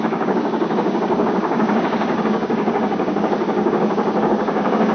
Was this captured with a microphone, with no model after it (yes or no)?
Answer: no